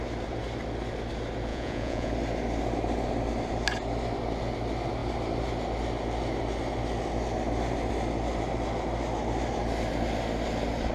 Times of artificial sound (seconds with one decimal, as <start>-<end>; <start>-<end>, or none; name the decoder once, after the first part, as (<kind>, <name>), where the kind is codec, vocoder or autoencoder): 1.5-2.1 (vocoder, Vocos)